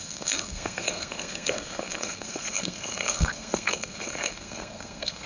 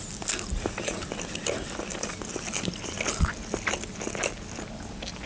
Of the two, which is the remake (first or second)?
first